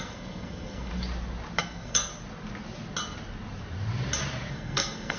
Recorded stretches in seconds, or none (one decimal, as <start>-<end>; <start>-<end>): 0.9-1.6; 2.1-4.5